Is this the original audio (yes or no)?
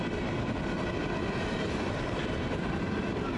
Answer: yes